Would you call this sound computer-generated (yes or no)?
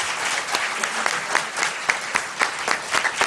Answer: no